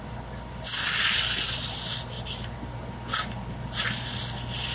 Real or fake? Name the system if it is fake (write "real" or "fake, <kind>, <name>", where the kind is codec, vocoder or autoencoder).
real